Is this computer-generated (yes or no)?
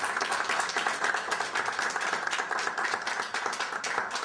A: no